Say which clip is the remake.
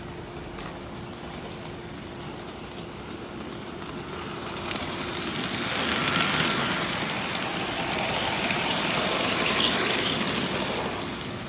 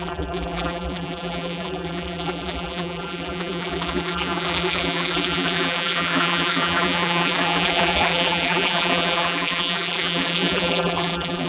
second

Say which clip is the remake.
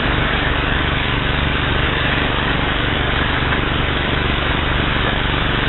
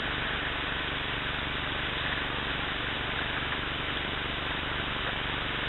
first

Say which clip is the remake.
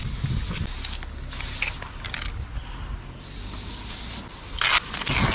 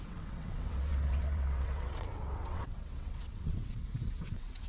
second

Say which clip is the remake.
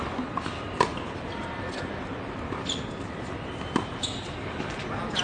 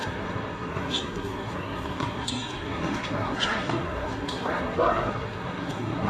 second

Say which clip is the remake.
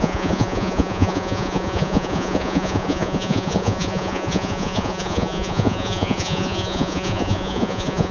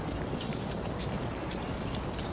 first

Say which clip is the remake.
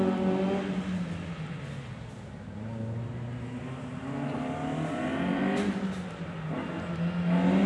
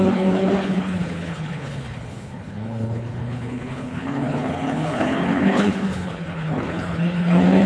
second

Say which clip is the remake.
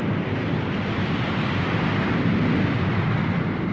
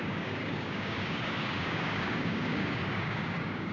second